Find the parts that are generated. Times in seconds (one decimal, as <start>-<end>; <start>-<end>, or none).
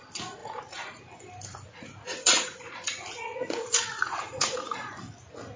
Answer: 0.4-1.0; 1.5-4.9